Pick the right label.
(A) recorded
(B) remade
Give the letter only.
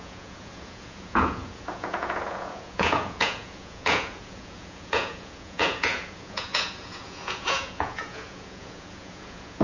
B